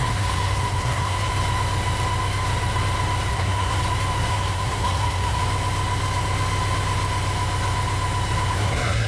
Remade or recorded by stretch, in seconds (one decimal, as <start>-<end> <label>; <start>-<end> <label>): 0.0-1.3 remade; 1.3-3.3 recorded; 3.3-3.8 remade; 3.8-4.3 recorded; 4.3-5.4 remade; 5.4-8.5 recorded; 8.5-9.1 remade